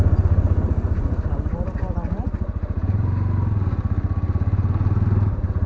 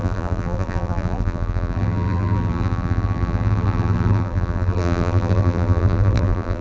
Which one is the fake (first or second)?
second